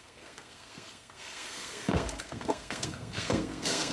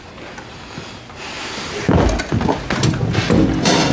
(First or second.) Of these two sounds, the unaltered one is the second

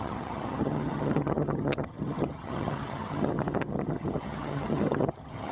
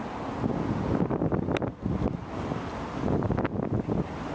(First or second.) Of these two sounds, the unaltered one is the second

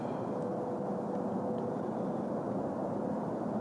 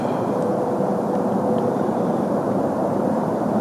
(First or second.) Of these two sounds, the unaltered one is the first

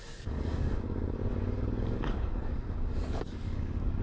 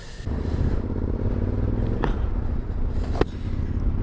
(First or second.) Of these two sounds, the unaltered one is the second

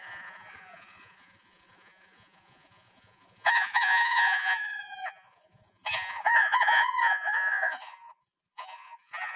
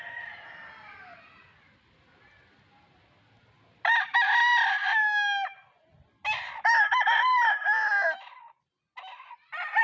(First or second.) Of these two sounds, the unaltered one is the second